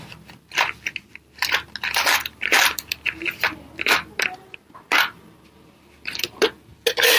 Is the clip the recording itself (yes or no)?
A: yes